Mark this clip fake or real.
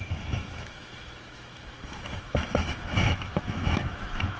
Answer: fake